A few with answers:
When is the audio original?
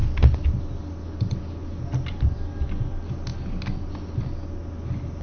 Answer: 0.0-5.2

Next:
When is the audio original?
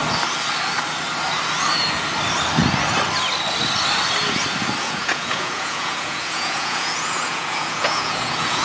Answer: 0.0-4.8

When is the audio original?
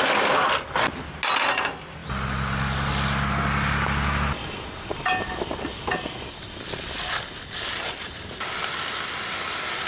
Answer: 0.0-9.9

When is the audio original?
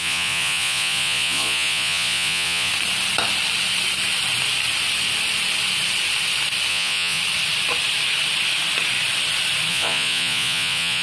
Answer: 2.7-6.7; 7.2-9.7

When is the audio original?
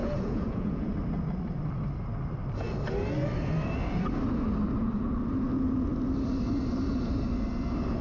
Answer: 0.9-8.0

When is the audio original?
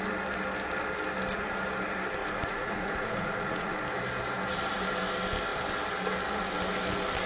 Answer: 0.0-2.2; 3.8-7.3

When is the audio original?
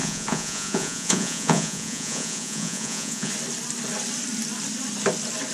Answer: 3.3-5.5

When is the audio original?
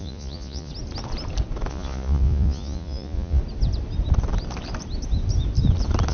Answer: 0.7-1.7; 3.4-6.1